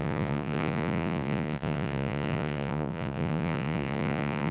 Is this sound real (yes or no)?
no